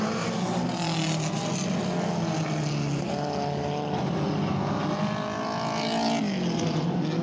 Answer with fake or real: real